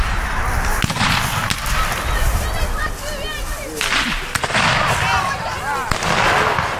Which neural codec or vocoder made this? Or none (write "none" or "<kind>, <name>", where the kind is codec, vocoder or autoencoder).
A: none